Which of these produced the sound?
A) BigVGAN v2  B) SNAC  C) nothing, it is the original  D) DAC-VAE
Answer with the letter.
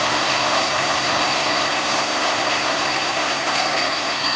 B